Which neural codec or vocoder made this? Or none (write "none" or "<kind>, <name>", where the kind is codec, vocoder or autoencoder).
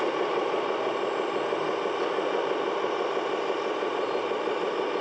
none